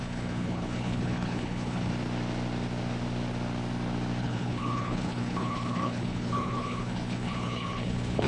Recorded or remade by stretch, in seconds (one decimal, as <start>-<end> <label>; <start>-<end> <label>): 0.0-1.9 remade; 1.9-4.2 recorded; 4.2-8.3 remade